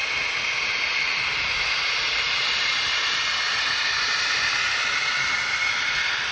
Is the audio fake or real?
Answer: real